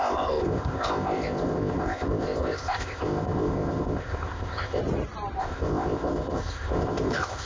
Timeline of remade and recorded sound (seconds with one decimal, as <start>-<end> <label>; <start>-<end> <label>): 0.0-4.8 remade; 4.8-5.4 recorded; 5.4-7.5 remade